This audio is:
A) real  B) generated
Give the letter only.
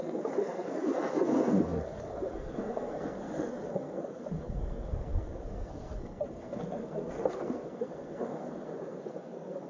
B